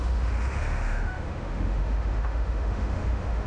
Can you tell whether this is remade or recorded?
remade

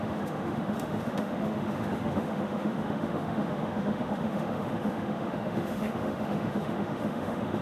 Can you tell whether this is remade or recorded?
remade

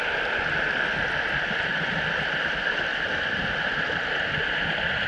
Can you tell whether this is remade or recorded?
recorded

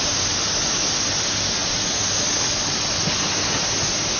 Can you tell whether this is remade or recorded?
recorded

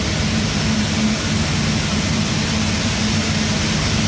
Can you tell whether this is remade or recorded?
recorded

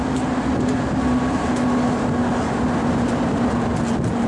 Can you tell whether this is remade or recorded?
recorded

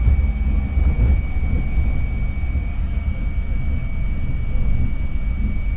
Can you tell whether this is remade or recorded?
recorded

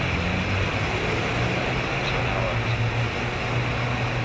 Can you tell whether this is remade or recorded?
recorded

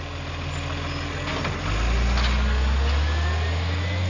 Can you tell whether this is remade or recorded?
recorded